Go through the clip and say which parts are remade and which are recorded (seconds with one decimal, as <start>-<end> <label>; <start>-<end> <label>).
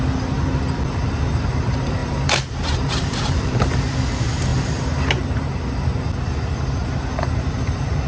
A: 0.0-2.0 recorded; 2.0-3.8 remade; 3.8-8.1 recorded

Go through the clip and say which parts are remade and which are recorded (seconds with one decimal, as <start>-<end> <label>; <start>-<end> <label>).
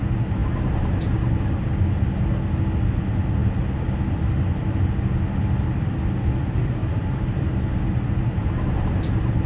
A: 0.0-6.8 recorded; 6.8-8.5 remade; 8.5-9.5 recorded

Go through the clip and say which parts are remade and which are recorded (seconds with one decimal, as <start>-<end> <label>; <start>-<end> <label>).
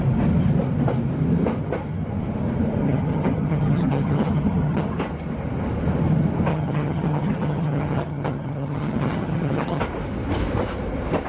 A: 0.0-2.8 recorded; 2.8-4.9 remade; 4.9-6.5 recorded; 6.5-9.8 remade; 9.8-11.3 recorded